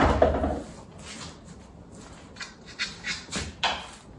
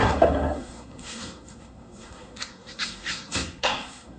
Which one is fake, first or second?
second